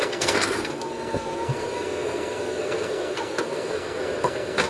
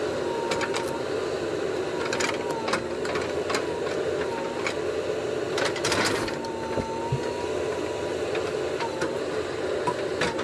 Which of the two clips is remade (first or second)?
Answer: first